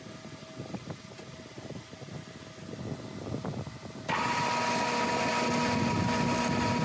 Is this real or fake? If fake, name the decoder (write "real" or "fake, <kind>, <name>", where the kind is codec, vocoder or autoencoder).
real